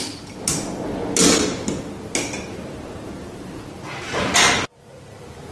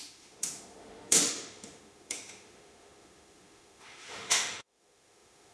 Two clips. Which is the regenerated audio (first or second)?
second